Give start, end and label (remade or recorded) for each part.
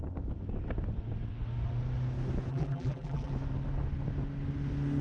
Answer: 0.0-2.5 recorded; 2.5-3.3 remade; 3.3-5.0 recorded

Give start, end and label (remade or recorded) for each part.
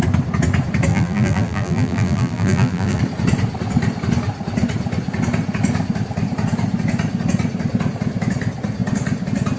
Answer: 0.0-0.9 recorded; 0.9-3.0 remade; 3.0-9.6 recorded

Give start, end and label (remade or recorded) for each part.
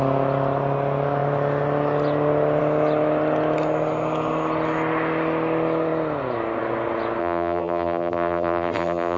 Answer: 0.0-7.2 recorded; 7.2-9.2 remade